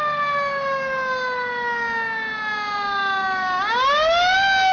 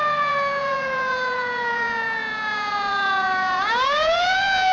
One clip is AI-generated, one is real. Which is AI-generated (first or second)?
second